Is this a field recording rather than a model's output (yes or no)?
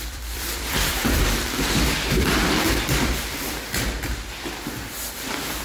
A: no